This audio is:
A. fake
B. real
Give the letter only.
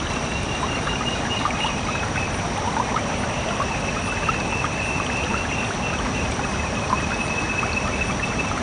B